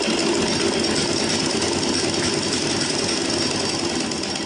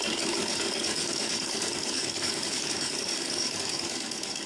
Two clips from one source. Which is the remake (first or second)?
second